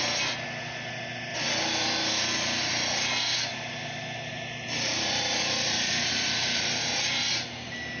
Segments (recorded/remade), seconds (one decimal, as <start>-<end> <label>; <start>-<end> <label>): 0.0-3.5 recorded; 3.5-6.8 remade; 6.8-8.0 recorded